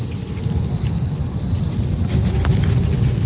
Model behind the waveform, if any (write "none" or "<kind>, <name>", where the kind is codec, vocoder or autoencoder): none